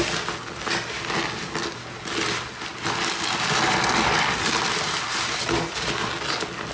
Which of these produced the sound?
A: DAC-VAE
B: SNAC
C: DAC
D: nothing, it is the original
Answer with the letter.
D